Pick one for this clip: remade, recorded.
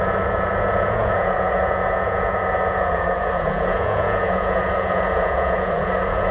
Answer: remade